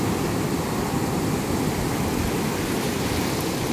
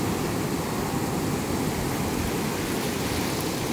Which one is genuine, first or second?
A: second